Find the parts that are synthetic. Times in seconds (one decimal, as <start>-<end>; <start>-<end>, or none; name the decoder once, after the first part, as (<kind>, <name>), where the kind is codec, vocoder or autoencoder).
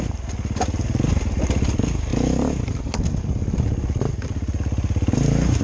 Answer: none